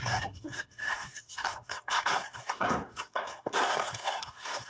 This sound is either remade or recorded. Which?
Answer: remade